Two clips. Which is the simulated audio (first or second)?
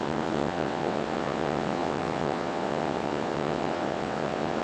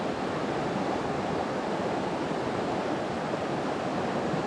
first